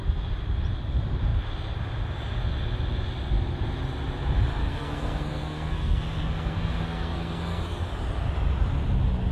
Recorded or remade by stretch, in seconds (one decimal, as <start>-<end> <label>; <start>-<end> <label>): 0.0-4.6 recorded; 4.6-7.6 remade; 7.6-9.3 recorded